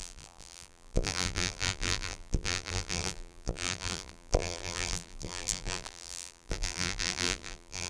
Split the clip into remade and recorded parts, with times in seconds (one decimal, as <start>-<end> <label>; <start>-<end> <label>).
0.0-7.9 remade